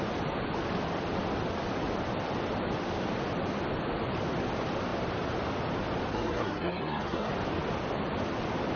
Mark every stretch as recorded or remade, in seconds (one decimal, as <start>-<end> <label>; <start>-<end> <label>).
0.0-6.1 recorded; 6.1-7.3 remade; 7.3-8.8 recorded